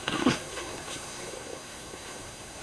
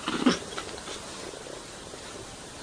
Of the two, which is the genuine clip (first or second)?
second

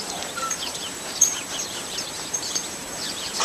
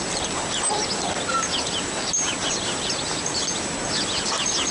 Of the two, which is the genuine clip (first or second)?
second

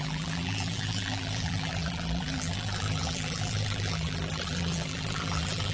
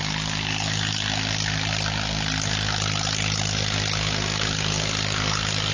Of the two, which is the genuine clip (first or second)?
second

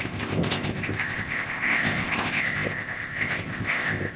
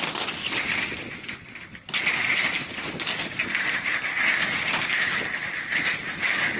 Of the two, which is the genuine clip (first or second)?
second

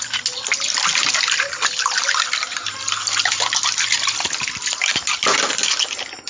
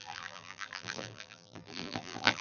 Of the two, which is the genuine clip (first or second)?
first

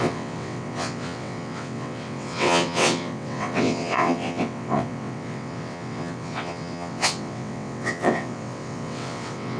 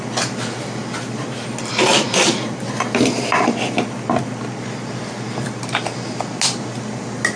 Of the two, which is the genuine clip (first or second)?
second